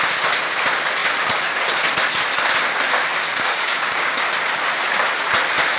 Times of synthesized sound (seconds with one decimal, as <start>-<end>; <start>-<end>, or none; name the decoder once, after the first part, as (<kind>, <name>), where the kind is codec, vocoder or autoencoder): 3.3-4.2 (codec, DAC)